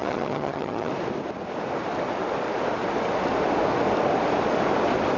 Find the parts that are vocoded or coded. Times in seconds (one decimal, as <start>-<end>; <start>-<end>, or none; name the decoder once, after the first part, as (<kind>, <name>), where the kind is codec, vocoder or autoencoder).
0.0-0.9 (vocoder, HiFi-GAN)